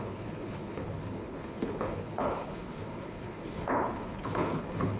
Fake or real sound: fake